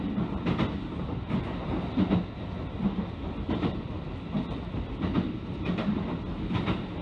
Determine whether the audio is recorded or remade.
recorded